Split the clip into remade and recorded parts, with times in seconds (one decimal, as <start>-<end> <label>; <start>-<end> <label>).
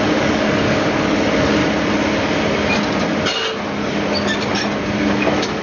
0.0-1.6 remade; 1.6-5.0 recorded; 5.0-5.6 remade